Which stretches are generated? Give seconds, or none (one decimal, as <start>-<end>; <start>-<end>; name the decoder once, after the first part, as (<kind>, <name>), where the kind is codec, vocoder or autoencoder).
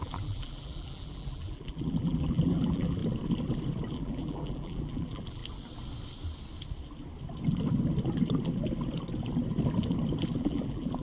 0.0-3.0 (vocoder, BigVGAN v2); 3.9-5.4; 10.4-11.0